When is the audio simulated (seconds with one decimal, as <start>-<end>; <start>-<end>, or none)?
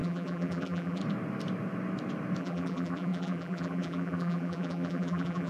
0.0-1.0; 2.4-5.5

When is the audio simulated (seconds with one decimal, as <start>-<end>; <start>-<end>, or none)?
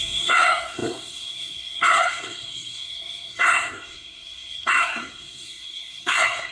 0.0-6.5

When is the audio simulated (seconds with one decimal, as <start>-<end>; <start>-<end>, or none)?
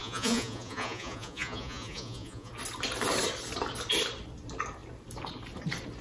0.0-2.5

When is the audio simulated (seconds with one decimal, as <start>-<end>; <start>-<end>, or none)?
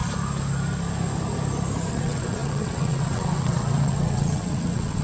1.9-5.0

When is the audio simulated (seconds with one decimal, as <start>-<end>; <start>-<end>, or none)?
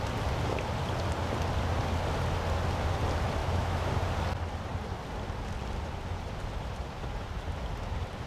3.4-3.9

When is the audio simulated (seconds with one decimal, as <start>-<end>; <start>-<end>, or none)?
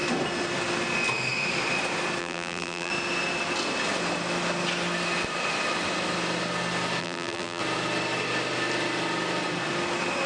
2.2-2.9; 7.0-7.6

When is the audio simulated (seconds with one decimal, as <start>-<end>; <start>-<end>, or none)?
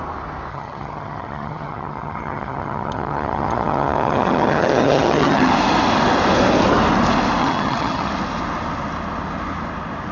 0.5-5.5; 7.4-8.1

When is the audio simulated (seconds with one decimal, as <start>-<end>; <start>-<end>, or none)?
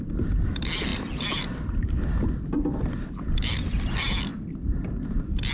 0.9-3.7